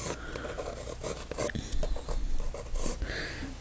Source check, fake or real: real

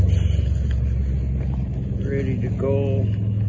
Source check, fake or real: real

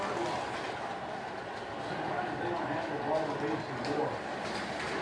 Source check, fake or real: real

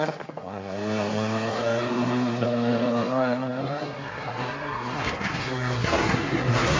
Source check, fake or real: fake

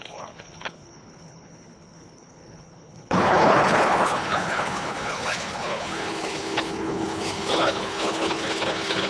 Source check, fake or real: fake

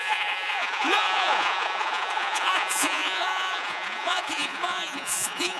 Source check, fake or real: fake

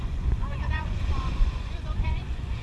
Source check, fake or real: fake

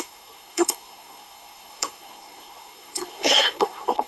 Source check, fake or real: fake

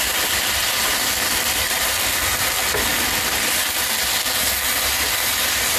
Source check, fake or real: real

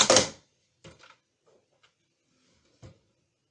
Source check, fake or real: real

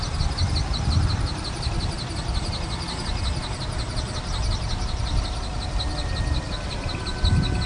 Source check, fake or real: real